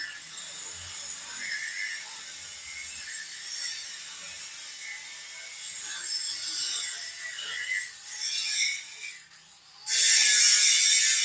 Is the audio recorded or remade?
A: recorded